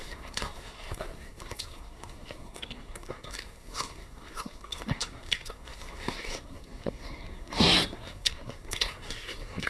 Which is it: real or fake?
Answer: fake